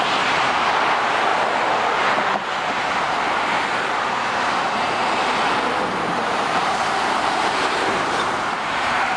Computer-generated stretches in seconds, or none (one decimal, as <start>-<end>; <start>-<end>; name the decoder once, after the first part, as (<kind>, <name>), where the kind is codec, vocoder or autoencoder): 0.0-1.3 (vocoder, BigVGAN v2); 4.2-5.0; 5.9-9.2

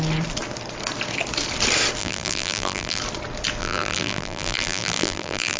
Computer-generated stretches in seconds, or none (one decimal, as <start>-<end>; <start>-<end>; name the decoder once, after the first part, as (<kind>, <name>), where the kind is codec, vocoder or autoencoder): 2.0-3.0 (vocoder, BigVGAN v2); 3.6-5.6

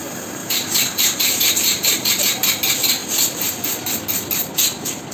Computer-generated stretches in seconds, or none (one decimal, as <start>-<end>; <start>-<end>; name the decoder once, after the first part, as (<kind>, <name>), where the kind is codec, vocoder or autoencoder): 0.4-2.2 (vocoder, BigVGAN v2)

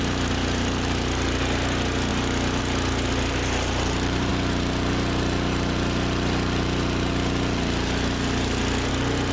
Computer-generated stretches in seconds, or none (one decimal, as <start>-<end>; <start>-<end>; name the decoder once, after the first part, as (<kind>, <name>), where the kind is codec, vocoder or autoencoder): 0.0-2.1 (vocoder, BigVGAN v2); 2.6-4.3; 8.9-9.3

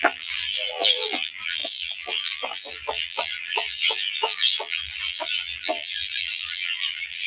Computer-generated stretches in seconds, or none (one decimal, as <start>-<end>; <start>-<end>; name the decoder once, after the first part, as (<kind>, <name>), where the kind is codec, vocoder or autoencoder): 0.0-7.3 (vocoder, BigVGAN v2)